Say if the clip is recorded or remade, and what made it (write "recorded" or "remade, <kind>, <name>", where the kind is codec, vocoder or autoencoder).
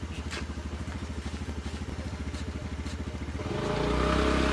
recorded